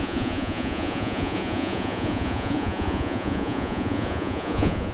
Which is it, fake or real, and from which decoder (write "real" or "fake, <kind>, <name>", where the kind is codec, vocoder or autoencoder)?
fake, vocoder, Vocos